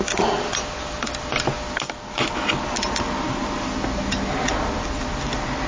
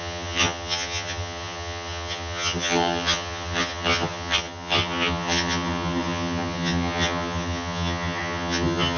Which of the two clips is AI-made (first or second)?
second